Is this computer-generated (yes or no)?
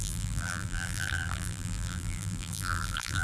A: yes